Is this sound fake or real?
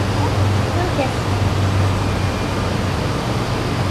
real